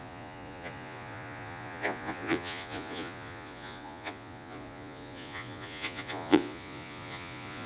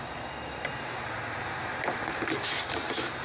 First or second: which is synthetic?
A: first